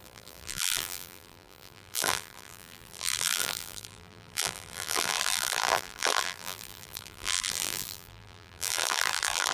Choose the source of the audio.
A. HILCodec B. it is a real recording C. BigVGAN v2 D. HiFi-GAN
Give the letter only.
C